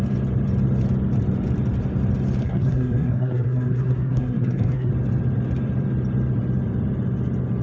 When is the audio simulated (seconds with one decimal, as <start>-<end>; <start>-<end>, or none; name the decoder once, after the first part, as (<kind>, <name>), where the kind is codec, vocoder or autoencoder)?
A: 2.4-4.9 (codec, SNAC)